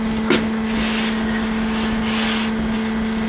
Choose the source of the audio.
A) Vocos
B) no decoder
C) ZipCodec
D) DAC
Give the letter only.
B